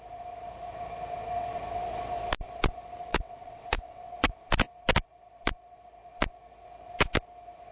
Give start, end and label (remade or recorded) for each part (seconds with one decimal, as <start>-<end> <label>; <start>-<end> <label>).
0.0-3.0 recorded; 3.0-4.5 remade; 4.5-7.7 recorded